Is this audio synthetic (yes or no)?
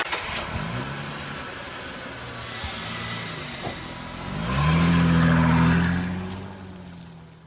no